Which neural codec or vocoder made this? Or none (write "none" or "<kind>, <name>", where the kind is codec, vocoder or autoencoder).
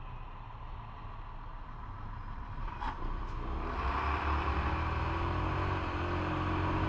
none